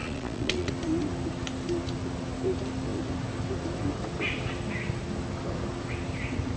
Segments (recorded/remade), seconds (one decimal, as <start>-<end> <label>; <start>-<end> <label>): 0.0-0.7 remade; 0.7-6.6 recorded